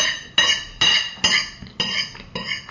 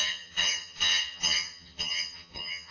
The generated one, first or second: second